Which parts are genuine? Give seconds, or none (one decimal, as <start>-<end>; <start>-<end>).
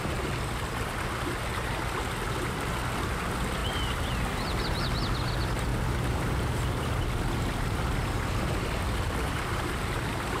0.0-5.7